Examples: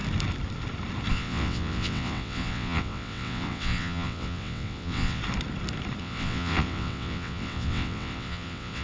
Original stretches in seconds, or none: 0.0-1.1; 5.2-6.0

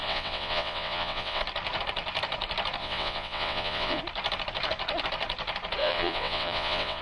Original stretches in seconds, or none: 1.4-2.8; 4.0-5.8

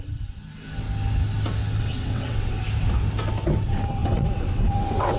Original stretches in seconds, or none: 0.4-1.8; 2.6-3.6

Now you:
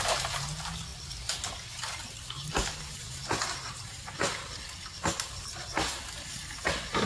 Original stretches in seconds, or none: 0.0-7.1